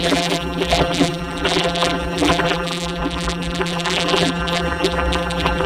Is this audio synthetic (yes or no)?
yes